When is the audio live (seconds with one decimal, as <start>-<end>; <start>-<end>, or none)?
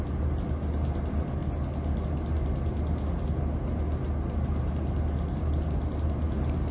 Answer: 0.0-6.7